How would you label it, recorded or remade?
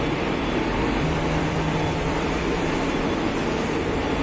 remade